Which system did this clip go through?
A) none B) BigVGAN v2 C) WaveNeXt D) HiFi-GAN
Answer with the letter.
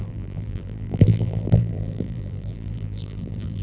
B